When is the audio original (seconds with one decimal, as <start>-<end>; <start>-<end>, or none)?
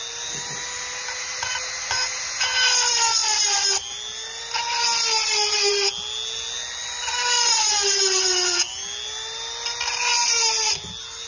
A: 0.0-11.3